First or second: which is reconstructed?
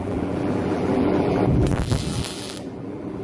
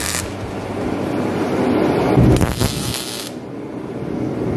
first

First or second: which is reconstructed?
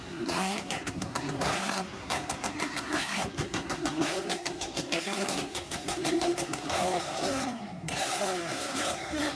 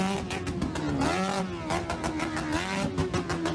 first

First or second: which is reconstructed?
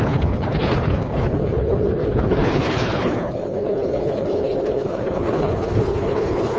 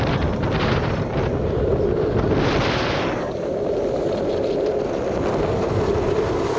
first